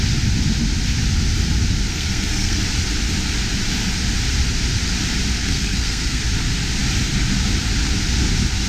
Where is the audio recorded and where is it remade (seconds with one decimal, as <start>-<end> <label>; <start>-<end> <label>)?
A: 0.0-1.9 recorded; 1.9-2.6 remade; 2.6-5.4 recorded; 5.4-6.2 remade; 6.2-8.7 recorded